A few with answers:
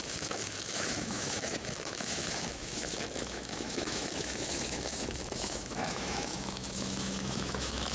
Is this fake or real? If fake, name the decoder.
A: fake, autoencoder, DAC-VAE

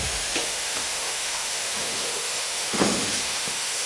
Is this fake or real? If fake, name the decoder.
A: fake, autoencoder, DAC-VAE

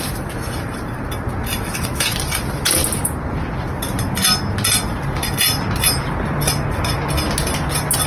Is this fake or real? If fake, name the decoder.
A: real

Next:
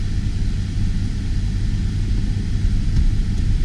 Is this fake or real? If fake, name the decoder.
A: real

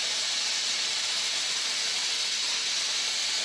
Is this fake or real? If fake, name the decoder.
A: real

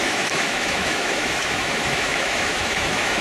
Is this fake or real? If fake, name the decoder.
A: fake, autoencoder, DAC-VAE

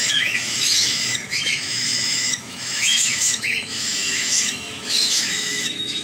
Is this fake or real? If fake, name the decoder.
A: fake, autoencoder, DAC-VAE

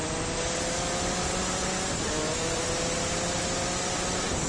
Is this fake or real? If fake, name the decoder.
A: real